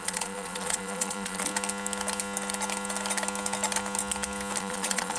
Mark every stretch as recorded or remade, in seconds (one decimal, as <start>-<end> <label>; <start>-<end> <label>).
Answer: 0.0-1.5 remade; 1.5-4.6 recorded; 4.6-5.2 remade